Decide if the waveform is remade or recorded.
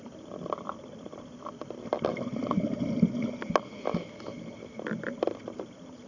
recorded